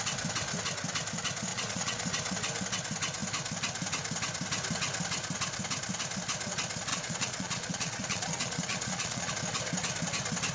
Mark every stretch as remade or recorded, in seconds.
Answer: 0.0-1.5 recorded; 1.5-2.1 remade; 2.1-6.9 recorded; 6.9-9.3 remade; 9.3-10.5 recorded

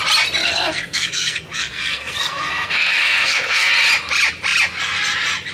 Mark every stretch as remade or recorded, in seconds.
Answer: 0.0-0.4 recorded; 0.4-3.7 remade; 3.7-5.5 recorded